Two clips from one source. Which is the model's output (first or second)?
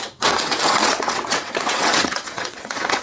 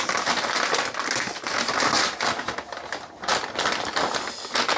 first